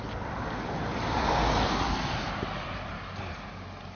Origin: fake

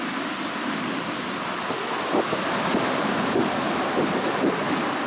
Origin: real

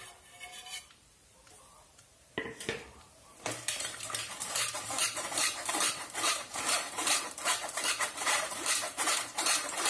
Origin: fake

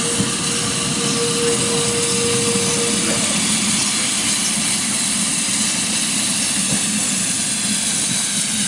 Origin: real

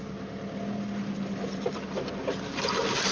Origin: real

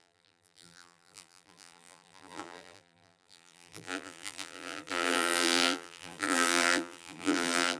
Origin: fake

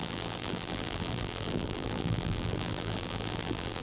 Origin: fake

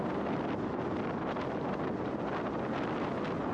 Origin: real